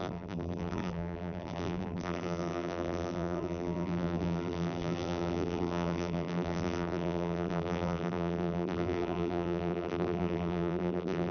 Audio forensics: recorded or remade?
remade